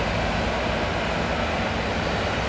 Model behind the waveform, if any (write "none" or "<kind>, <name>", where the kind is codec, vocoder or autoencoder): none